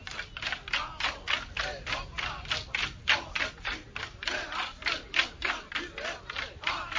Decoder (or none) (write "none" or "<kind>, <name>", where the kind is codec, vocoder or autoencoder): none